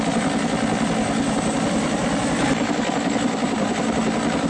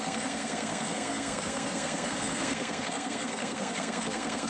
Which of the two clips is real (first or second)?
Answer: first